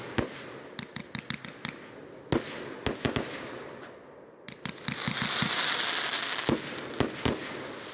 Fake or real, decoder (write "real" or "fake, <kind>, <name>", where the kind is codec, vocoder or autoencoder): real